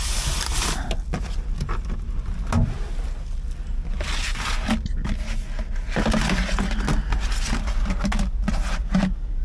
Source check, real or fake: real